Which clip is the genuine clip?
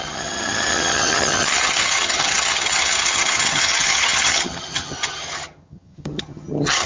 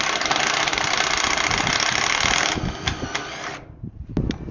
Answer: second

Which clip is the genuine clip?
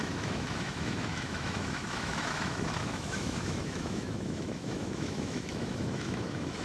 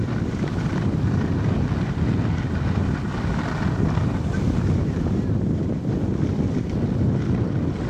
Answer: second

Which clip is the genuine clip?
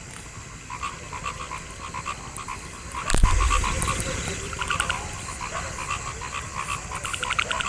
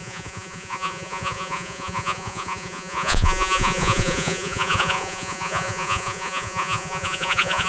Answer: first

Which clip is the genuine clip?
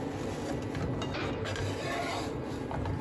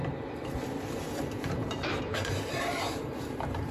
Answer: first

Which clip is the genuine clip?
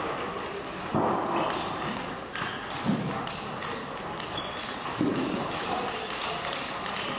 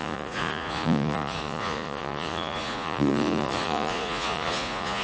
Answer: first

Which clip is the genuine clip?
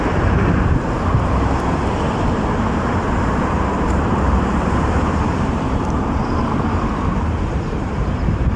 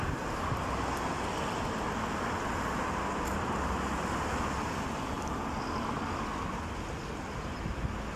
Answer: second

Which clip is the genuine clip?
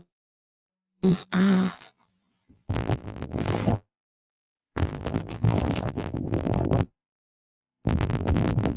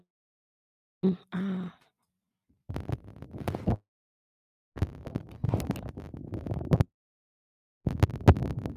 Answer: second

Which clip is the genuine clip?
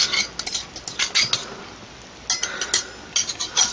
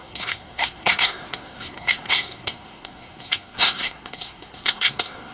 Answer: first